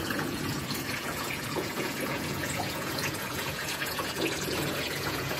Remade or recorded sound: remade